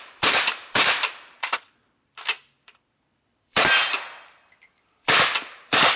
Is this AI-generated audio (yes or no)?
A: yes